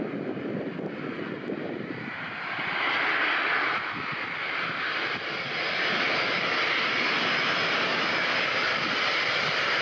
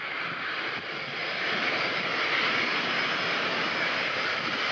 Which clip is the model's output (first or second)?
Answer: second